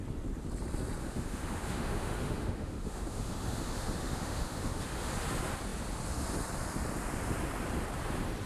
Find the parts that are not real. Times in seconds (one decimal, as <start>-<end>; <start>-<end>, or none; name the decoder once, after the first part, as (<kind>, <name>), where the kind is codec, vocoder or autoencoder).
1.0-5.1 (autoencoder, DAC-VAE)